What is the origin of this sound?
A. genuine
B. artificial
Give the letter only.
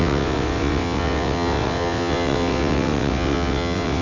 B